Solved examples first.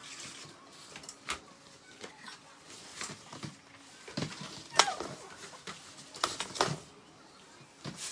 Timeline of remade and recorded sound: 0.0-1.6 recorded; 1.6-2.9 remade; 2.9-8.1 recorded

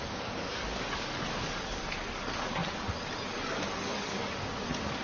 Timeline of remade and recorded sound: 0.0-2.6 remade; 2.6-3.5 recorded; 3.5-5.0 remade

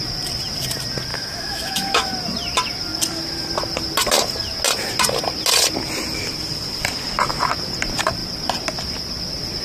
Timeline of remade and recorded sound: 0.0-1.1 recorded; 1.1-2.1 remade; 2.1-9.6 recorded

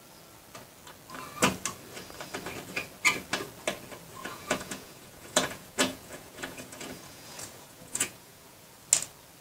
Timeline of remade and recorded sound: 0.0-4.2 recorded; 4.2-8.7 remade; 8.7-9.4 recorded

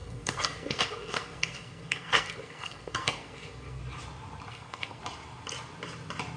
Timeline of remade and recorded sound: 0.0-3.8 remade; 3.8-4.5 recorded; 4.5-5.0 remade; 5.0-6.4 recorded

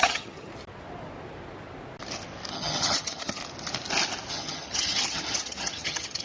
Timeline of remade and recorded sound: 0.0-0.5 remade; 0.5-2.5 recorded; 2.5-3.4 remade; 3.4-4.3 recorded; 4.3-6.2 remade

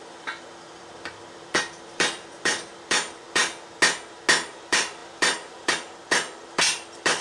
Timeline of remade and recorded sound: 0.0-3.4 remade; 3.4-4.5 recorded; 4.5-7.2 remade

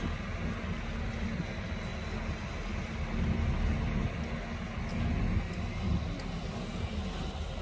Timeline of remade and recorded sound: 0.0-7.6 recorded